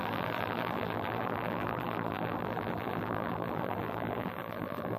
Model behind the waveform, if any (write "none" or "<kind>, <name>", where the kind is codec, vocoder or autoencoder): vocoder, BigVGAN v2